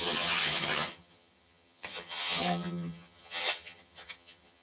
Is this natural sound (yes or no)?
no